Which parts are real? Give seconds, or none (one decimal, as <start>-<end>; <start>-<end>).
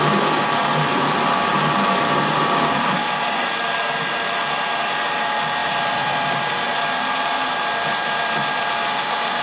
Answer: 0.0-9.4